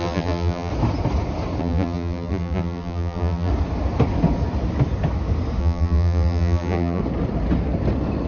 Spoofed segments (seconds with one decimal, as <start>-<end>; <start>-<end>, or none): 0.0-0.7; 1.6-3.5; 5.6-7.0